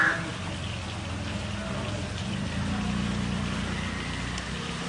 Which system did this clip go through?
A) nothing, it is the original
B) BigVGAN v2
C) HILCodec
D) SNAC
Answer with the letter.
A